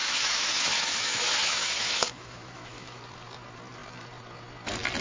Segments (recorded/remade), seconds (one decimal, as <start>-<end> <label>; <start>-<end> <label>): 0.0-3.0 remade; 3.0-5.0 recorded

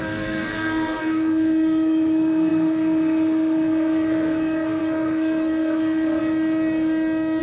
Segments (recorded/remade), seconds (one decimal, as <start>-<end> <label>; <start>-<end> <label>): 0.0-6.2 remade; 6.2-7.4 recorded

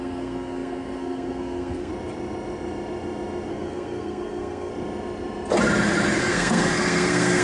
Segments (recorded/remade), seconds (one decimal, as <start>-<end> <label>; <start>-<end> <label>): 0.0-1.9 remade; 1.9-3.5 recorded; 3.5-4.7 remade; 4.7-6.2 recorded; 6.2-7.4 remade

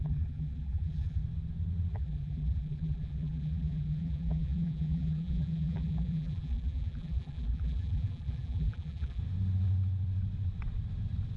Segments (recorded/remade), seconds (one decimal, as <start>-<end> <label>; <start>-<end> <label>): 0.0-1.2 remade; 1.2-1.9 recorded; 1.9-9.2 remade; 9.2-11.4 recorded

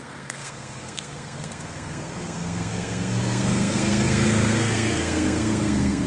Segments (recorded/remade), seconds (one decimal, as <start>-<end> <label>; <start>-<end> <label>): 0.0-6.1 remade

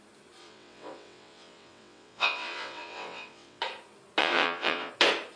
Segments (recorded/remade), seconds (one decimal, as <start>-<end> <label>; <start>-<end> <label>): 0.0-0.4 recorded; 0.4-3.6 remade; 3.6-4.2 recorded; 4.2-4.9 remade; 4.9-5.4 recorded

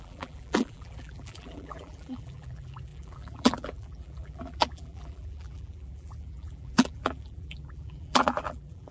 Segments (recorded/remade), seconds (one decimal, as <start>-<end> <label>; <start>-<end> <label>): 0.0-8.9 remade